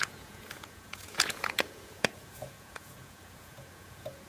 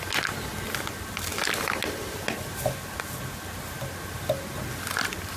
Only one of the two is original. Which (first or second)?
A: second